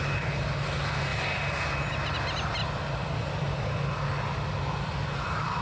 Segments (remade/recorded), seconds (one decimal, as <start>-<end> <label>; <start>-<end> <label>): 0.0-5.6 recorded